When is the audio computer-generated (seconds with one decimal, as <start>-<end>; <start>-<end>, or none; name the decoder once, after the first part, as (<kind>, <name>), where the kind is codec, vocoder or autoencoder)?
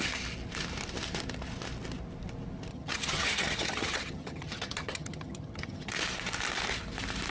2.7-5.9 (vocoder, HiFi-GAN)